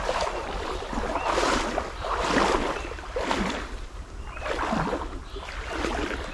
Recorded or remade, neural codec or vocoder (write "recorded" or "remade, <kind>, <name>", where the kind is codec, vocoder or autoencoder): recorded